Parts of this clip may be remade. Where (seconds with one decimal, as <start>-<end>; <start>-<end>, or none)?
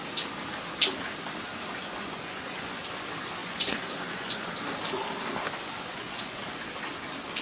1.8-2.8; 3.4-4.5; 5.6-6.4